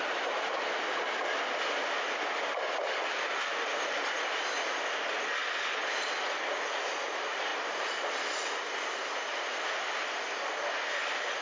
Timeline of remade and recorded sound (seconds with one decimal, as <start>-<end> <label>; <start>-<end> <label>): 0.0-11.4 recorded